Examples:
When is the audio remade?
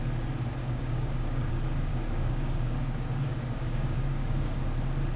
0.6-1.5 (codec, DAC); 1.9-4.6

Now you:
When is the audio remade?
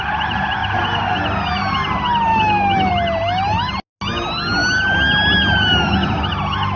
2.3-2.9 (autoencoder, DAC-VAE)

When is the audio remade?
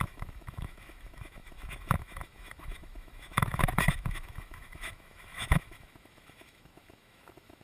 0.0-7.6 (autoencoder, DAC-VAE)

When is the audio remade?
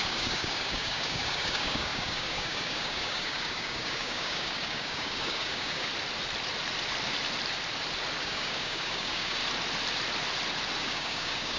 0.0-5.9 (codec, DAC); 8.2-9.4; 10.8-11.6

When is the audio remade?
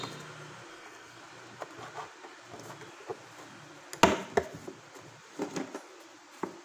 0.7-1.2 (codec, SNAC)